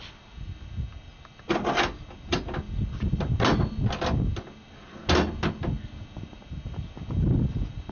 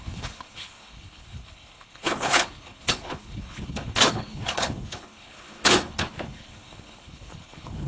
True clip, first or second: first